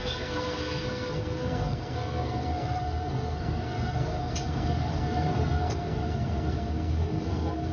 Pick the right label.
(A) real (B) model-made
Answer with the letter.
B